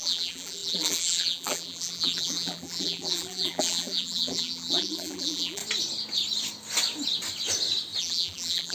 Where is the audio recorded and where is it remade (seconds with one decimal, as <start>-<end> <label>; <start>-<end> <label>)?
0.0-5.6 remade; 5.6-8.0 recorded; 8.0-8.7 remade